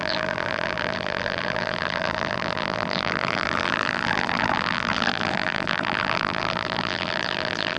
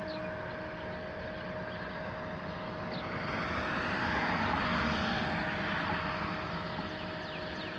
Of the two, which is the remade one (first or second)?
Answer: first